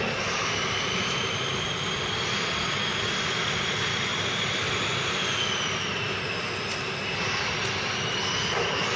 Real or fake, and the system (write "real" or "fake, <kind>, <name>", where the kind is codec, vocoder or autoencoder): real